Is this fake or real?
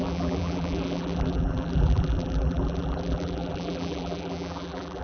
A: fake